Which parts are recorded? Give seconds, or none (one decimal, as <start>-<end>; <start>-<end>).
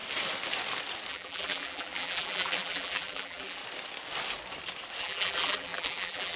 0.0-1.1; 3.6-5.0